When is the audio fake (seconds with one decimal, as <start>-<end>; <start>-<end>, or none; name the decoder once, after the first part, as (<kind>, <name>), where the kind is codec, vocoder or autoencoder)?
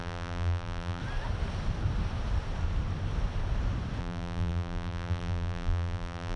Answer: 0.0-1.0 (vocoder, BigVGAN v2); 4.0-6.4